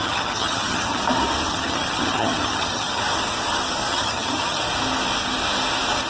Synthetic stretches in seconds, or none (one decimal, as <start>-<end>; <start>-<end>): 0.0-1.0; 1.5-3.0; 3.9-4.6